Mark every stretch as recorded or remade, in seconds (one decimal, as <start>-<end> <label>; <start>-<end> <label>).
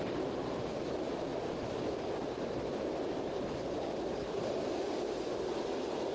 0.0-6.1 remade